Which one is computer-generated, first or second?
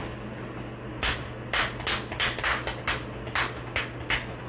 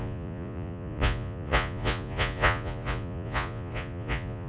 second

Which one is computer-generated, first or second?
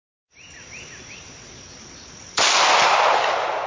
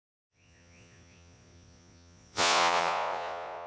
second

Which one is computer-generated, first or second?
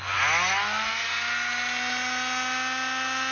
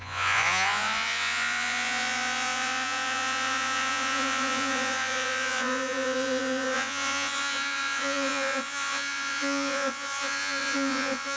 second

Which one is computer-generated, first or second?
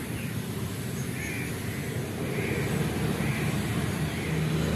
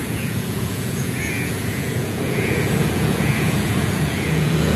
second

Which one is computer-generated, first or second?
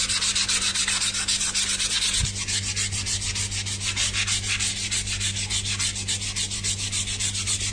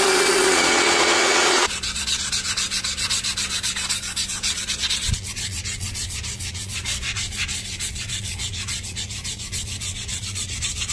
second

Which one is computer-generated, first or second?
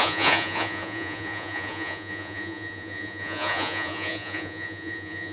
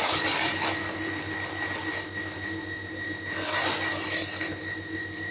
first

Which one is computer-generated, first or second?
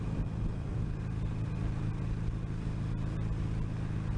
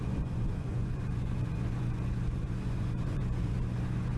second